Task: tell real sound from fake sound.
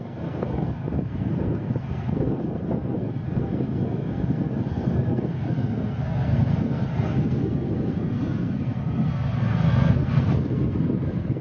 fake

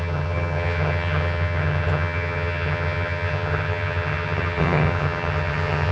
fake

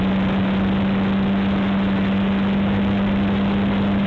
real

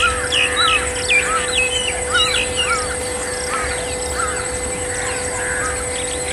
fake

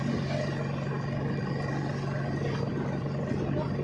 real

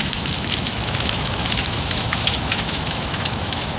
fake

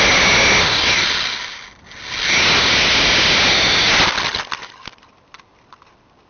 real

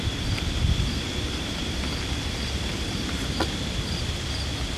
real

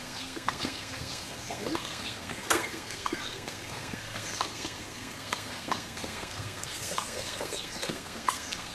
fake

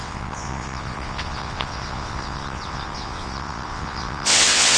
fake